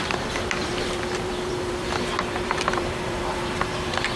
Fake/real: fake